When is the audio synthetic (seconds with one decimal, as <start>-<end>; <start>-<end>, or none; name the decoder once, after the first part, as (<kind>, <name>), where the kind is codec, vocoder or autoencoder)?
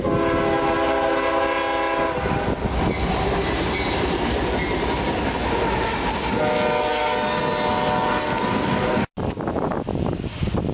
6.9-7.4 (codec, SNAC)